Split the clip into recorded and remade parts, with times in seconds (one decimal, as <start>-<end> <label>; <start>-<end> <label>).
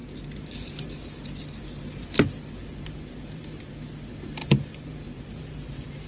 0.0-3.7 remade; 3.7-4.4 recorded; 4.4-6.1 remade